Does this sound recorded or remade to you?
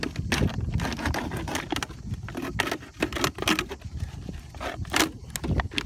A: recorded